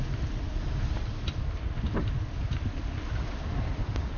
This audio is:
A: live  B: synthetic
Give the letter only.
A